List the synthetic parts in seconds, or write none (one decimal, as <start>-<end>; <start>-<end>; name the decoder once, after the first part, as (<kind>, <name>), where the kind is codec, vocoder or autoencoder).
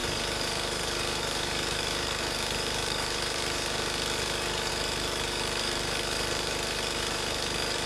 0.0-7.9 (codec, DAC)